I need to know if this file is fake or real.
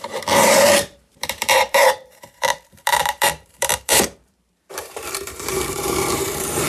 fake